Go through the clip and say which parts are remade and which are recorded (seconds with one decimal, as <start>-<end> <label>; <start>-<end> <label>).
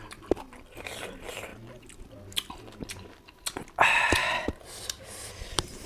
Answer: 0.0-1.5 remade; 1.5-5.0 recorded; 5.0-5.9 remade